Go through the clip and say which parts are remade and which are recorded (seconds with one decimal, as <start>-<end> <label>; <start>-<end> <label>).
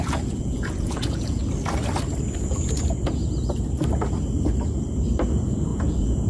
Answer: 0.0-1.4 remade; 1.4-2.4 recorded; 2.4-3.2 remade; 3.2-5.3 recorded; 5.3-6.3 remade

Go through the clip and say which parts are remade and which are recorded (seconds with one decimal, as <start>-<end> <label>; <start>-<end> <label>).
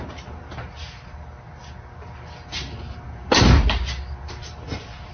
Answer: 0.0-5.1 recorded